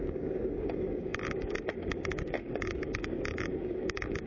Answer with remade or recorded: remade